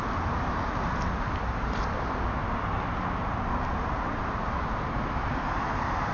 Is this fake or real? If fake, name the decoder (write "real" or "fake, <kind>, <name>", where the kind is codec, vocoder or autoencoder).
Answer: real